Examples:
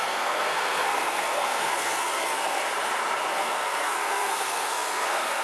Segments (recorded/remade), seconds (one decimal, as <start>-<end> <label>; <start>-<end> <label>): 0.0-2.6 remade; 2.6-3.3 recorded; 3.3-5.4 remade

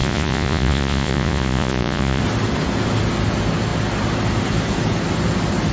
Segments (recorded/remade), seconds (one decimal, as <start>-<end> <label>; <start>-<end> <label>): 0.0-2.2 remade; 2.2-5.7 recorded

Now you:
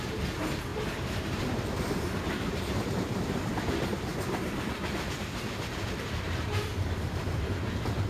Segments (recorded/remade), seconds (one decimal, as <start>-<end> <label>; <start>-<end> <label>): 0.0-0.7 recorded; 0.7-3.5 remade; 3.5-4.1 recorded; 4.1-8.1 remade

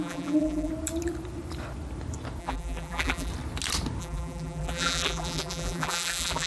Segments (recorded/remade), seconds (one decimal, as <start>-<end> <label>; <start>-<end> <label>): 0.0-0.7 remade; 0.7-2.4 recorded; 2.4-3.3 remade; 3.3-4.0 recorded; 4.0-6.5 remade